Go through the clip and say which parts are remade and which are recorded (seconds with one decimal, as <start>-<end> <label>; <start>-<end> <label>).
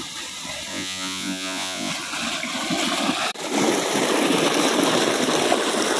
0.0-0.7 recorded; 0.7-1.9 remade; 1.9-6.0 recorded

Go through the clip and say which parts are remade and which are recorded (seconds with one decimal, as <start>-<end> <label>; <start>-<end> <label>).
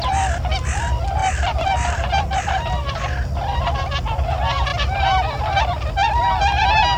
0.0-1.2 recorded; 1.2-2.2 remade; 2.2-4.7 recorded; 4.7-5.6 remade; 5.6-7.0 recorded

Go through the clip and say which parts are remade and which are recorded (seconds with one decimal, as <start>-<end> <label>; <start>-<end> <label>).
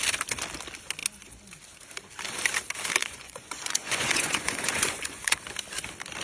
0.0-3.0 recorded; 3.0-5.4 remade; 5.4-6.2 recorded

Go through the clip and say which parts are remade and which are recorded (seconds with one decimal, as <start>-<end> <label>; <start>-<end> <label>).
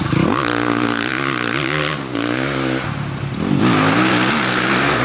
0.0-5.0 recorded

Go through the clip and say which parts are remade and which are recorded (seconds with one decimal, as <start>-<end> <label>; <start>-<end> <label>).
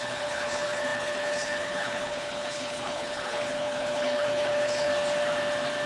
0.0-4.9 remade; 4.9-5.9 recorded